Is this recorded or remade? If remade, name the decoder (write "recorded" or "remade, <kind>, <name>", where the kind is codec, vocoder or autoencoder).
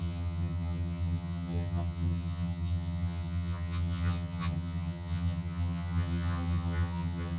remade, vocoder, HiFi-GAN